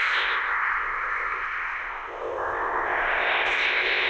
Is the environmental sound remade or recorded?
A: remade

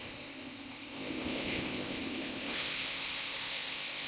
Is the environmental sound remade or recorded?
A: remade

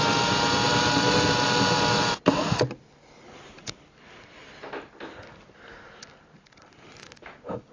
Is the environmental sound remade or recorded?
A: recorded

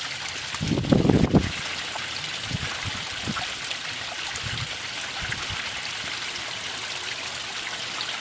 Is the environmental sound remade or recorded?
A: recorded